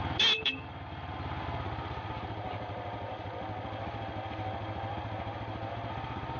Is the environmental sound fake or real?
real